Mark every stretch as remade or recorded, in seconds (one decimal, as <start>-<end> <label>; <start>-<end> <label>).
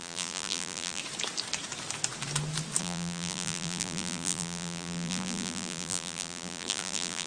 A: 0.0-1.0 remade; 1.0-2.8 recorded; 2.8-7.3 remade